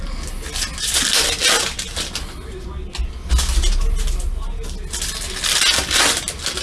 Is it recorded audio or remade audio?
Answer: recorded